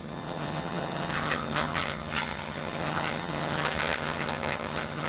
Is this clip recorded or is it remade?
remade